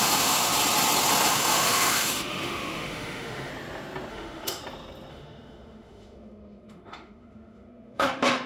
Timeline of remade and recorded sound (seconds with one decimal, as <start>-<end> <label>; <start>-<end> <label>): 0.0-0.5 remade; 0.5-1.3 recorded; 1.3-3.5 remade; 3.5-4.1 recorded; 4.1-4.6 remade; 4.6-5.1 recorded; 5.1-8.5 remade